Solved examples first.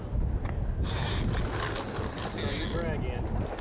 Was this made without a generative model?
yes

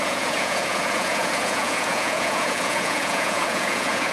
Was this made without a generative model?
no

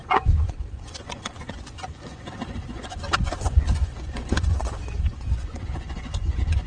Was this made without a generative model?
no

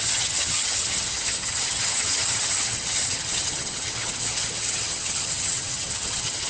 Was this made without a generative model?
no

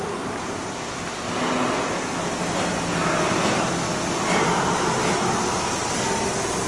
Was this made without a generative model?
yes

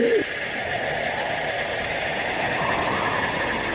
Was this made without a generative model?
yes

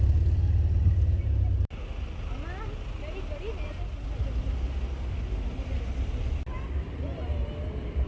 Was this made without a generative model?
yes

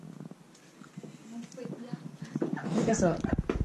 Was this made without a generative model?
yes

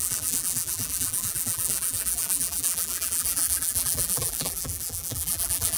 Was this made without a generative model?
no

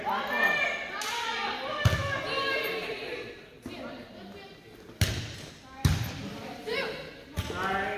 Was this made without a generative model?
yes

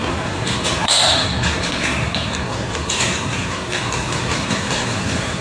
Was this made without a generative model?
no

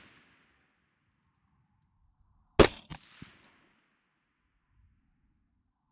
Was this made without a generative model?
yes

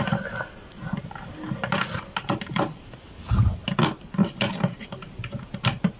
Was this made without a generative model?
yes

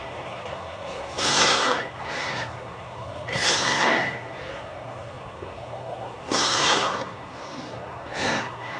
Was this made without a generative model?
no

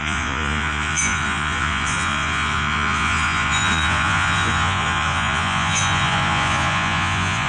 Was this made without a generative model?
no